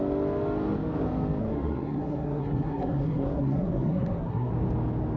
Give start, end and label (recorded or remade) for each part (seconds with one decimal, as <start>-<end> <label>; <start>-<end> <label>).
0.0-1.4 recorded; 1.4-4.5 remade; 4.5-5.2 recorded